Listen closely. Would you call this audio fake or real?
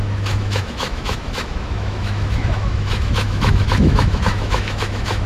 fake